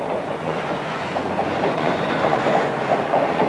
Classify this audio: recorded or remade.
remade